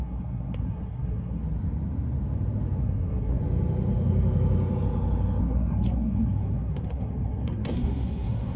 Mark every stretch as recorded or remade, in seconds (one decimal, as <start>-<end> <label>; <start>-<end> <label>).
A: 0.0-1.4 remade; 1.4-2.8 recorded; 2.8-3.4 remade; 3.4-5.4 recorded; 5.4-8.6 remade